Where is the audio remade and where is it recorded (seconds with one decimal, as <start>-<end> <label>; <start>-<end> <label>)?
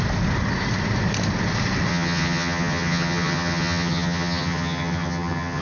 0.0-1.9 recorded; 1.9-5.6 remade